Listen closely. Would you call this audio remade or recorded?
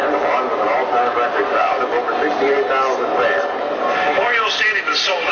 recorded